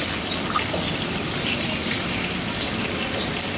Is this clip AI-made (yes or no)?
no